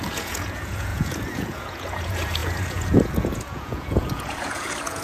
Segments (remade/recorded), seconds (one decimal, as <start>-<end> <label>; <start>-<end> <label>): 0.0-5.0 remade